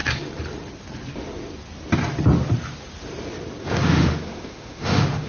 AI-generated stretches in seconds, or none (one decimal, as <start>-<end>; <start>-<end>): 3.6-5.3